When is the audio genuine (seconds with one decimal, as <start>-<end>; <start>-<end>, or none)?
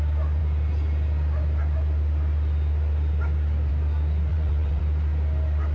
0.0-4.3; 4.8-5.7